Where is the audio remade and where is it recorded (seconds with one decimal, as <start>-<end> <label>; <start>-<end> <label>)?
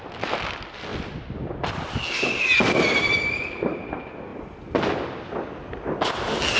0.0-6.6 recorded